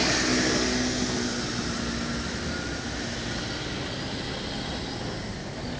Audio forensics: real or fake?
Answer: real